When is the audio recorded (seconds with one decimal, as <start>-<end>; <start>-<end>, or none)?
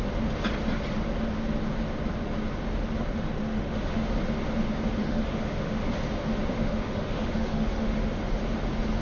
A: 0.0-3.4; 4.0-5.0; 5.9-6.5; 8.1-9.0